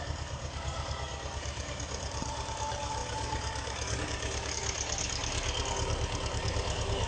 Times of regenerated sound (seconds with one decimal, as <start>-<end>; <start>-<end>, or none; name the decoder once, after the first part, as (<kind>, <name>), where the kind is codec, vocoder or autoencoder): 0.0-7.1 (codec, DAC)